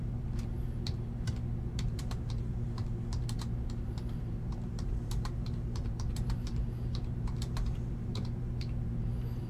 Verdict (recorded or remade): remade